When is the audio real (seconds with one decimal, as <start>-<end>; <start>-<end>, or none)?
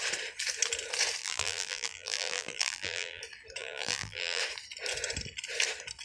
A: 0.0-1.2; 3.2-3.6; 4.4-6.0